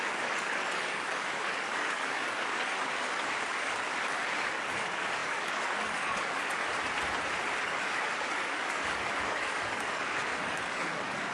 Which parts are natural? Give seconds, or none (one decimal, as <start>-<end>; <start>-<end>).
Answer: 6.6-7.6